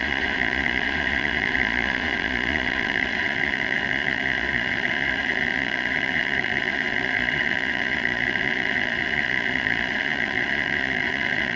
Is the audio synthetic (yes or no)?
yes